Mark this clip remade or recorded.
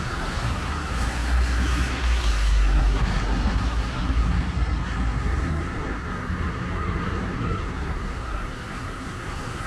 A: remade